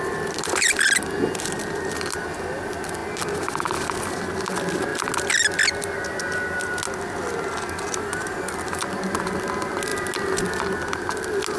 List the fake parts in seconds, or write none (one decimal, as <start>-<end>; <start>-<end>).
none

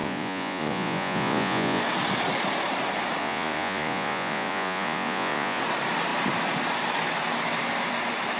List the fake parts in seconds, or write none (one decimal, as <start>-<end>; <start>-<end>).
0.0-1.8; 3.2-5.6

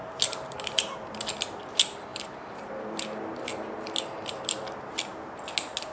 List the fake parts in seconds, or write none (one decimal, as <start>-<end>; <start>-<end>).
none

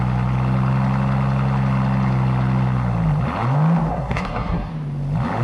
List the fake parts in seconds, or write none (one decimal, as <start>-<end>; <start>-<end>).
3.9-4.7

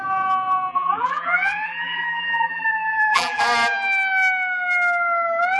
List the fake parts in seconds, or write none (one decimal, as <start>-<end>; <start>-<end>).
0.7-3.4

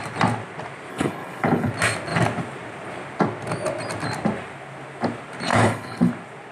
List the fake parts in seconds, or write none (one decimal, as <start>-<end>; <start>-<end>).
0.9-1.7; 5.5-6.1

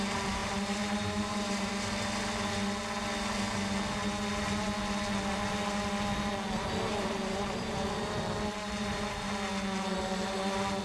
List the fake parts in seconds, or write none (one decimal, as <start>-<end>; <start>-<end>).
0.4-1.7; 6.9-9.3